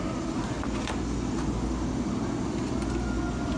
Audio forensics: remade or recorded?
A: recorded